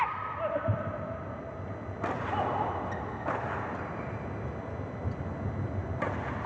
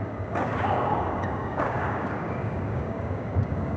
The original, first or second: first